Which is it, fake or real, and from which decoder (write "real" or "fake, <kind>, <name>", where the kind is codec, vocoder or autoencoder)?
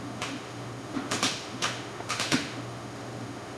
fake, autoencoder, DAC-VAE